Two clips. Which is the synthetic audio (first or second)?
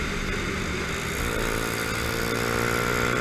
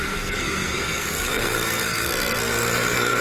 second